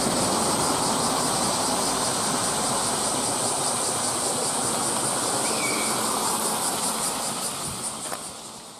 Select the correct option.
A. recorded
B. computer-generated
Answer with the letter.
A